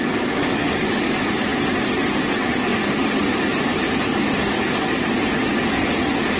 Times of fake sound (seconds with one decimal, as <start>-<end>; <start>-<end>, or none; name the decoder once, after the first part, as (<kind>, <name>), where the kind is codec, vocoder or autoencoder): none